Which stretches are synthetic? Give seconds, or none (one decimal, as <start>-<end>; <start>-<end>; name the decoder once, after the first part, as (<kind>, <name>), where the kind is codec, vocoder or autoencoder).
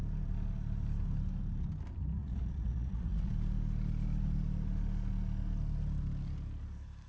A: 2.2-3.3 (vocoder, Vocos)